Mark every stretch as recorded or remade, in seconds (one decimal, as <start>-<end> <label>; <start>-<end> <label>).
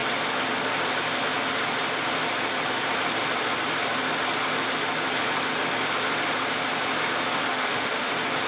0.0-7.5 recorded; 7.5-8.1 remade; 8.1-8.5 recorded